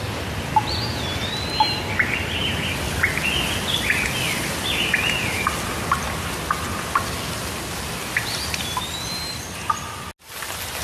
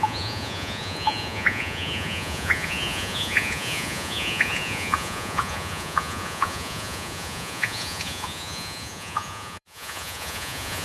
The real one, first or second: first